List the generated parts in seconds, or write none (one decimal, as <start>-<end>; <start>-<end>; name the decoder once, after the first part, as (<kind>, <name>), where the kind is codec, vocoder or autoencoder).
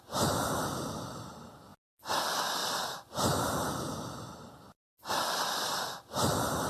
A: none